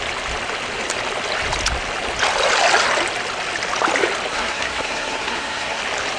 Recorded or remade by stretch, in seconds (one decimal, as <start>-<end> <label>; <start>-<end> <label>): 0.0-4.3 recorded; 4.3-5.8 remade; 5.8-6.2 recorded